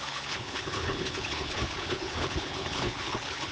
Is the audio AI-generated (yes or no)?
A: yes